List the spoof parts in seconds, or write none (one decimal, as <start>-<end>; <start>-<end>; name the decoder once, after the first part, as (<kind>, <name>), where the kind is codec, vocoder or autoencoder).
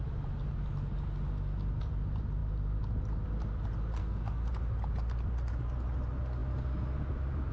4.0-4.5 (codec, SNAC)